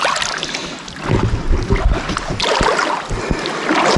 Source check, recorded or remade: recorded